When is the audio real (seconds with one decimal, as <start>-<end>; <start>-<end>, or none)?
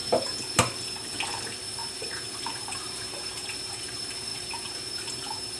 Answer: none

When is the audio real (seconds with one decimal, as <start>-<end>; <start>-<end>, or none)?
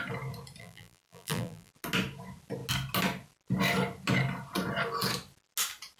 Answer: 0.0-0.6; 1.7-6.0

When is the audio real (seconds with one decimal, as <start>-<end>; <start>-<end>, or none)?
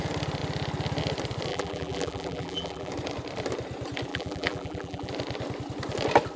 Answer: 0.0-1.5; 2.9-4.1; 5.1-6.4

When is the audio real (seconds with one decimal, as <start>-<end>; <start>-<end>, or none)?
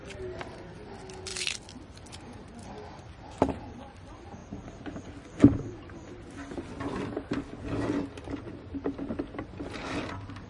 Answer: 0.0-1.3; 2.0-10.5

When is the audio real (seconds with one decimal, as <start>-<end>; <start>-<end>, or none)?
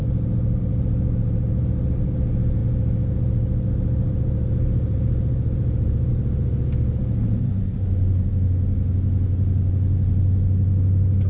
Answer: 0.0-11.3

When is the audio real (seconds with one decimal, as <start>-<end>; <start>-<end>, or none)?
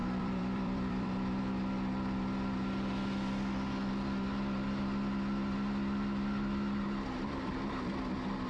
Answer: 1.4-8.5